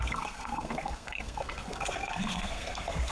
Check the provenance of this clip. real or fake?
fake